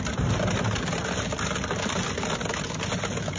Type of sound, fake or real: real